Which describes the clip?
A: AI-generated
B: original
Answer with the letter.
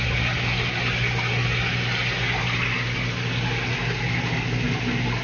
B